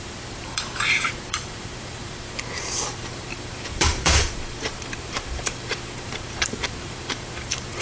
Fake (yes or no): yes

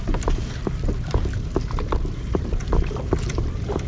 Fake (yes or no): yes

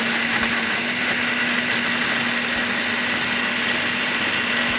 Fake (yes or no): no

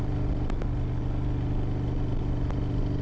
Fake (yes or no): no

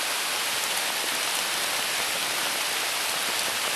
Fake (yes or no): no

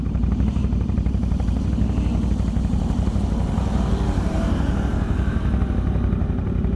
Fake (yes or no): yes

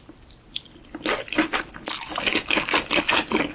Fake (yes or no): yes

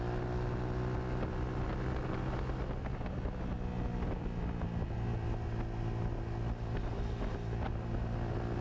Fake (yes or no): no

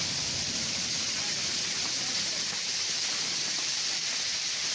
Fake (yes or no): no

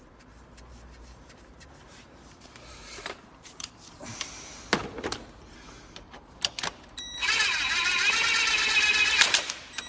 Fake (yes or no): yes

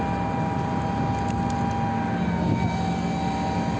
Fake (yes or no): no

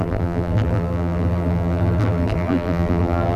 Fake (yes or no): yes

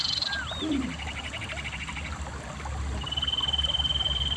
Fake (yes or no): no